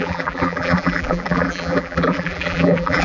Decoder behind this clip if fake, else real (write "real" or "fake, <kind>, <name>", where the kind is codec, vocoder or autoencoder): fake, vocoder, BigVGAN v2